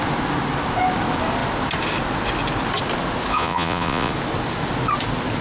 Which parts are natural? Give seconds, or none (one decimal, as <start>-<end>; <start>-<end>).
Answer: 0.0-3.3; 4.1-5.4